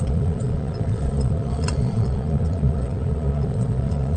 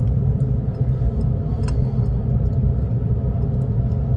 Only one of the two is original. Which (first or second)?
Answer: second